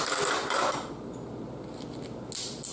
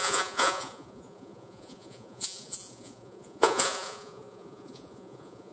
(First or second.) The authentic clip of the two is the first